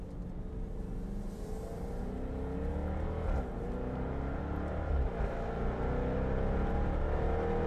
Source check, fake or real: real